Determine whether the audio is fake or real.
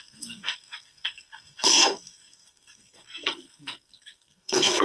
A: fake